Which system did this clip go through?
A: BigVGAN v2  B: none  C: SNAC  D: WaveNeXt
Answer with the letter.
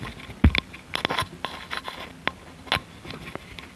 B